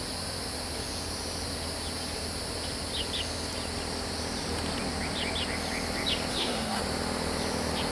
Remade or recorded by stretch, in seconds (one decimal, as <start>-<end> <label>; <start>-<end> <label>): 0.0-6.3 recorded; 6.3-6.8 remade; 6.8-7.9 recorded